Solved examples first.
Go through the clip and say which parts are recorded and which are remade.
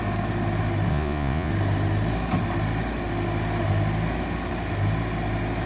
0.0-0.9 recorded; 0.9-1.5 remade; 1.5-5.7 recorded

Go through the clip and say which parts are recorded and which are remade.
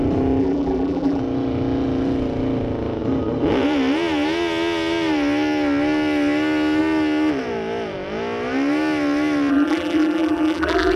0.0-0.4 recorded; 0.4-1.2 remade; 1.2-9.5 recorded; 9.5-11.0 remade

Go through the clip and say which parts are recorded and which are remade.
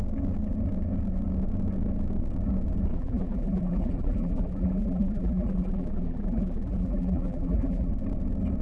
0.0-2.9 recorded; 2.9-7.9 remade; 7.9-8.6 recorded